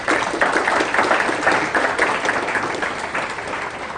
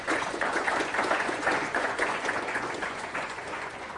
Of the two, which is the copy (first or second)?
second